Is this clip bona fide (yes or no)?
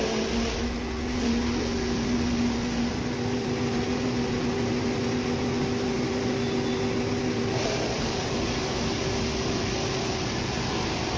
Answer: yes